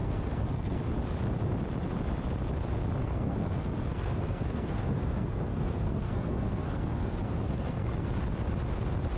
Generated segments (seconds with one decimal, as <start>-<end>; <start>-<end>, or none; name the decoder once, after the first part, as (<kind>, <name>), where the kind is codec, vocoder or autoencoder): 0.0-0.8 (codec, SNAC); 3.0-8.1